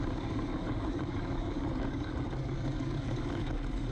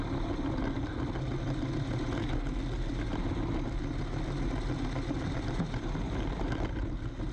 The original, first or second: second